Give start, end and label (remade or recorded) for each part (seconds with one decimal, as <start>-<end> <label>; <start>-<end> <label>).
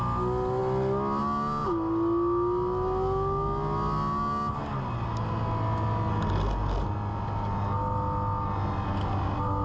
0.0-9.6 recorded